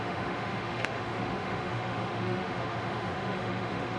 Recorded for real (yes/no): no